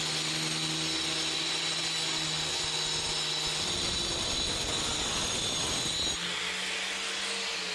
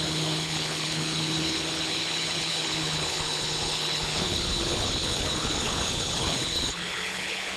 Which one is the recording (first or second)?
first